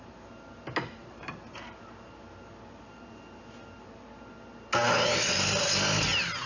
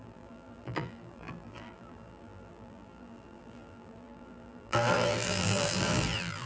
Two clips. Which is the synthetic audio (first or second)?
second